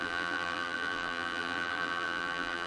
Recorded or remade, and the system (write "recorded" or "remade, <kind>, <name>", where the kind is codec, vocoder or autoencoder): remade, vocoder, BigVGAN v2